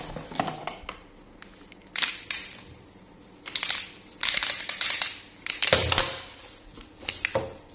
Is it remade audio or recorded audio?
recorded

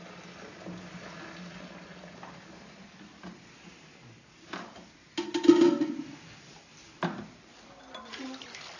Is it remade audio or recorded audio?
recorded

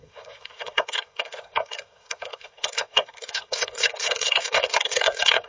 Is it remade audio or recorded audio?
remade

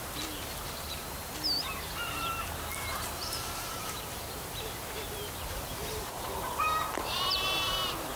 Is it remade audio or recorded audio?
remade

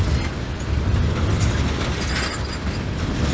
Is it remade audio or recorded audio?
recorded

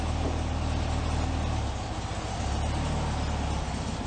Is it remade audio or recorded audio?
recorded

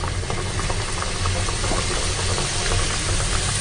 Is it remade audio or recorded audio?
recorded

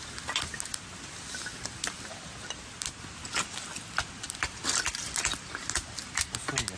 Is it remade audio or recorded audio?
recorded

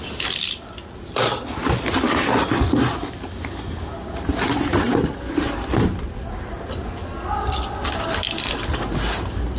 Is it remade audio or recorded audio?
recorded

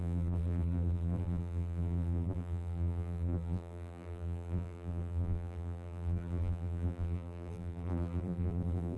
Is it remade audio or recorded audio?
remade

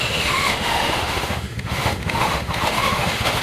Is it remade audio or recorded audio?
remade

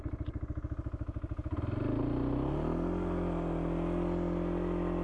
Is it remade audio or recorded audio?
recorded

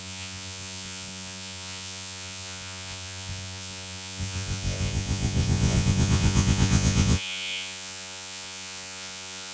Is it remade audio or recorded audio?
remade